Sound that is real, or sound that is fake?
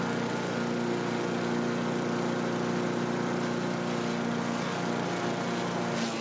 real